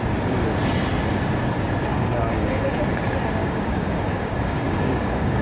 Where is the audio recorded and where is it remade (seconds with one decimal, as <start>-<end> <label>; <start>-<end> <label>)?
0.0-1.9 recorded; 1.9-2.8 remade; 2.8-3.4 recorded; 3.4-5.4 remade